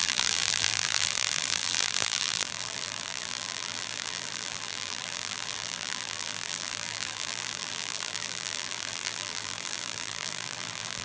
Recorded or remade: remade